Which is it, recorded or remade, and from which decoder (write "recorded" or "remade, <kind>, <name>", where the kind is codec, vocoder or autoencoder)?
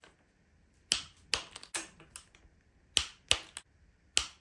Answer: recorded